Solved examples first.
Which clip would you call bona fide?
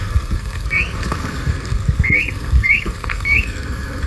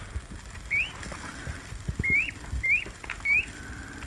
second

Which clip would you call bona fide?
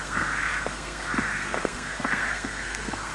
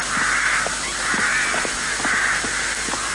second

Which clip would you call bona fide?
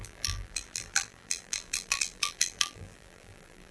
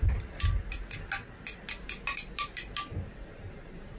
second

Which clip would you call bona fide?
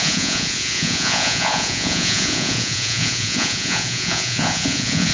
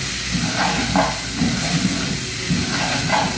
second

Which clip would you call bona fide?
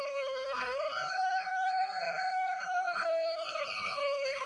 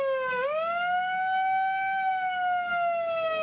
second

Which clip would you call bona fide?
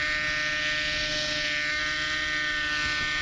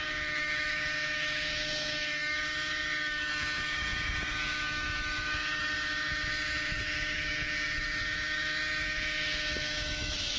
first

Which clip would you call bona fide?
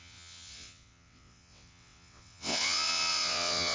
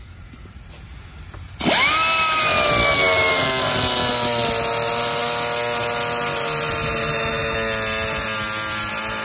second